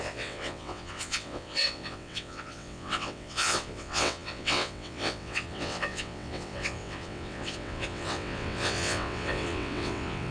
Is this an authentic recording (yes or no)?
no